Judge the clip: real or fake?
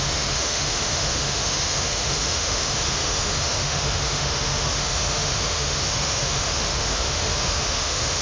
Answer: fake